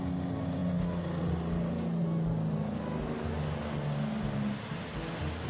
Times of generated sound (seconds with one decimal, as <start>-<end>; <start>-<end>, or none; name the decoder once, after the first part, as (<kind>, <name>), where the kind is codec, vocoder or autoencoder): none